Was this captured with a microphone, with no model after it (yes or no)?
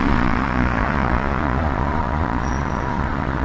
no